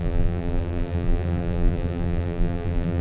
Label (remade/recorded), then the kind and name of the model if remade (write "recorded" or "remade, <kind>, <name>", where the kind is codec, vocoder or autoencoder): remade, vocoder, BigVGAN v2